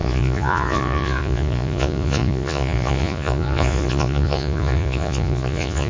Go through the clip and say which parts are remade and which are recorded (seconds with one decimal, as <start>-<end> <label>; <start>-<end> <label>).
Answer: 0.0-5.9 remade